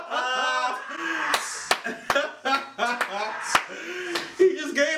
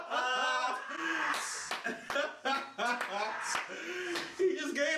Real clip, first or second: first